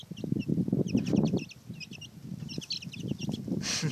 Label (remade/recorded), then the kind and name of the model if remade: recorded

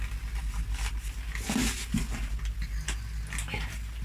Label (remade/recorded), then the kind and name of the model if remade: recorded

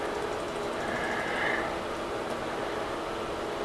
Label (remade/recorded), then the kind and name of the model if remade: recorded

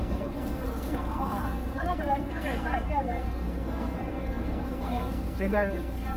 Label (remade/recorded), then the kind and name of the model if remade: remade, codec, SNAC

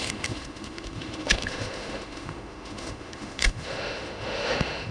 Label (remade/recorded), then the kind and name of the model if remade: remade, autoencoder, DAC-VAE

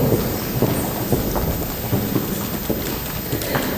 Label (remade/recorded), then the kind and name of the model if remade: recorded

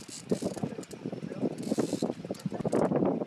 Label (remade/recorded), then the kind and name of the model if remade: recorded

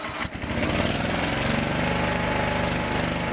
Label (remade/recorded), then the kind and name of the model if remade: recorded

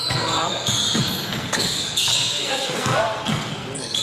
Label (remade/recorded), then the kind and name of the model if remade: remade, codec, SNAC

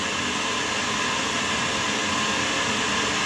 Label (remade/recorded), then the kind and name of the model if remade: recorded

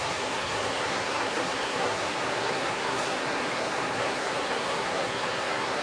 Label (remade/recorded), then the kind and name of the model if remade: remade, codec, SNAC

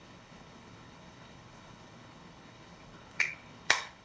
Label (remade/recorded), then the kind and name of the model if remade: remade, codec, HILCodec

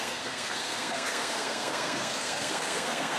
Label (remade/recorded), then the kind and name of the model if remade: remade, codec, SNAC